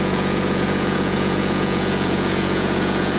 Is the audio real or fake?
fake